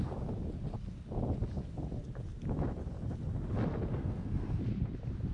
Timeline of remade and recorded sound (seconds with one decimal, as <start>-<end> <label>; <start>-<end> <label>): 0.0-3.9 recorded; 3.9-4.6 remade; 4.6-5.3 recorded